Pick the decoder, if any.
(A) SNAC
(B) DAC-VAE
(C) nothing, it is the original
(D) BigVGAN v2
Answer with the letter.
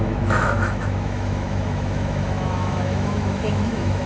B